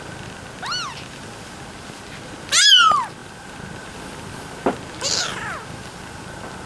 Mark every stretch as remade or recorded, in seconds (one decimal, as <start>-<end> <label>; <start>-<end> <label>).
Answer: 0.0-6.7 recorded